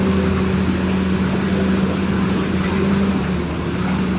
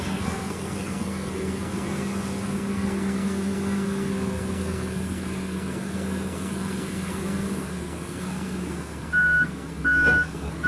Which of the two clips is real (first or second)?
first